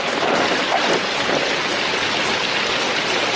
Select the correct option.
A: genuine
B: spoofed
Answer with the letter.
A